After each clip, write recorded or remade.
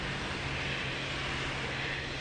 recorded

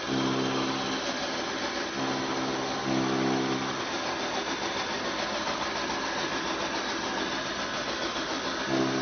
recorded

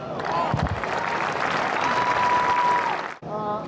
recorded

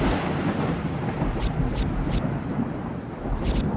recorded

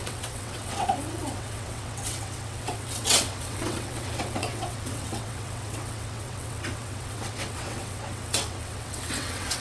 remade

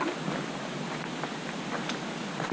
recorded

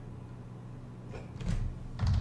recorded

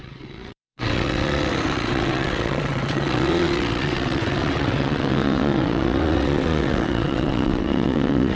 remade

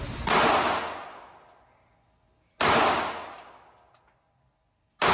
recorded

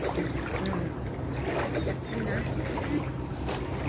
recorded